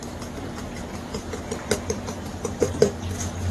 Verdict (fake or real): real